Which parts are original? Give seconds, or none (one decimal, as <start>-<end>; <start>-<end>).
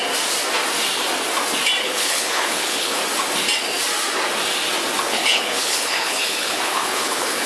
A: 0.0-1.8; 3.0-5.0